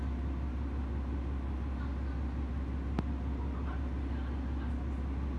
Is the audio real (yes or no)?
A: yes